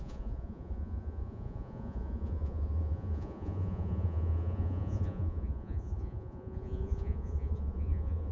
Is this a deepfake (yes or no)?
yes